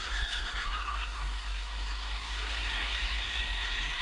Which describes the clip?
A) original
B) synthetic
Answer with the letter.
B